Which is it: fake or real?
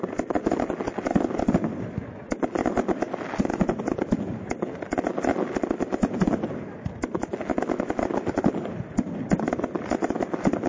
real